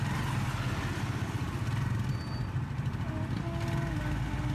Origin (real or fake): real